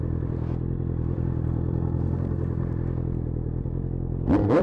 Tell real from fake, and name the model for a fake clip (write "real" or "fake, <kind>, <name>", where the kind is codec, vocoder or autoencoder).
fake, vocoder, BigVGAN v2